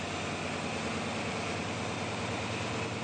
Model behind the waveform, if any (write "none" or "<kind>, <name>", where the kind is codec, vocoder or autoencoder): none